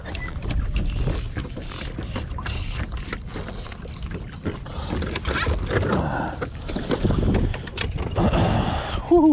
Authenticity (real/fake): real